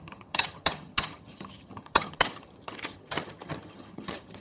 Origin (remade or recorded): remade